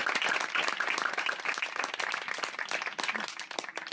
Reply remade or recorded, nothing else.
recorded